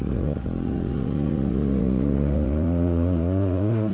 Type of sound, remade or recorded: remade